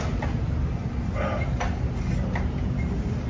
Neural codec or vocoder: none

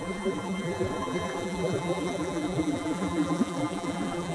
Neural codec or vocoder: vocoder, BigVGAN v2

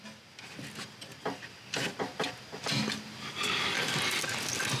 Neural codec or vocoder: none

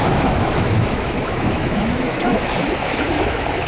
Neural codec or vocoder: autoencoder, DAC-VAE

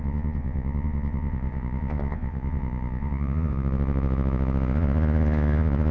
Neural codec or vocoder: vocoder, Vocos